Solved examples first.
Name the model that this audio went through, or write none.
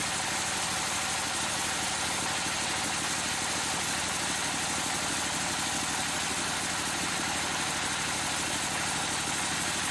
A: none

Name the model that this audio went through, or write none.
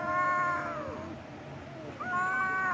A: none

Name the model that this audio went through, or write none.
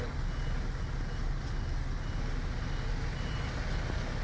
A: none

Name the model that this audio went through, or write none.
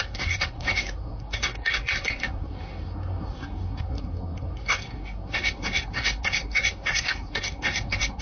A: codec, SNAC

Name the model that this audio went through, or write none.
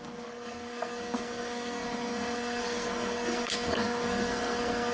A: codec, SNAC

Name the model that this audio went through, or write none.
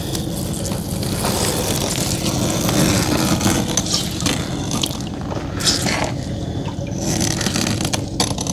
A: none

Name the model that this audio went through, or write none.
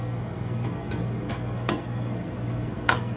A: codec, SNAC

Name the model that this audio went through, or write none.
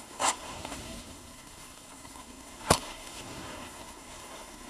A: codec, SNAC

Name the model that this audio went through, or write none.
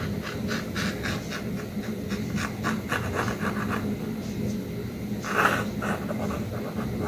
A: none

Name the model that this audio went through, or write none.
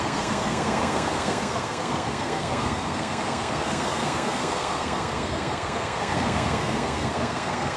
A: codec, SNAC